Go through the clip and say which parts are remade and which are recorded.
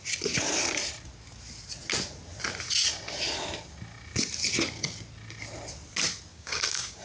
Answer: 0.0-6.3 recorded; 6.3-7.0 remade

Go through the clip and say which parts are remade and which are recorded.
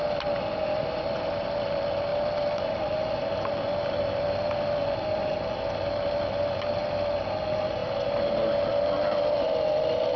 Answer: 0.0-10.2 recorded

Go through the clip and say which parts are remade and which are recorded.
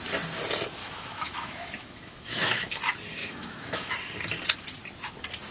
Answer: 0.0-0.8 recorded; 0.8-2.8 remade; 2.8-3.2 recorded; 3.2-3.9 remade; 3.9-5.5 recorded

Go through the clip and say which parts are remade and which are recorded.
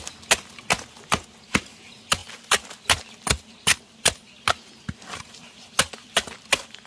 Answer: 0.0-6.9 recorded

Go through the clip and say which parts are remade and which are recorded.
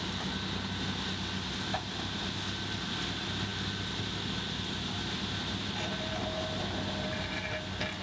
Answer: 0.0-1.7 recorded; 1.7-2.3 remade; 2.3-8.0 recorded